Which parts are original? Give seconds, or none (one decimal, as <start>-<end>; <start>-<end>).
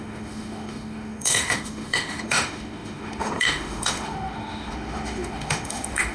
none